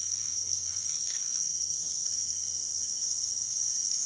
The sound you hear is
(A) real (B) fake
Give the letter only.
B